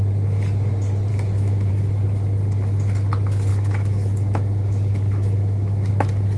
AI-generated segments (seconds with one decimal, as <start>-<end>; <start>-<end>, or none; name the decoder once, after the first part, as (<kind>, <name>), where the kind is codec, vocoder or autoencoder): 1.1-1.7 (autoencoder, DAC-VAE); 3.5-5.9